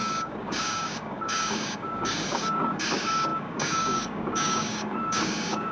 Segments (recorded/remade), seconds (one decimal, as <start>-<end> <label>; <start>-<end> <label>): 0.0-5.7 remade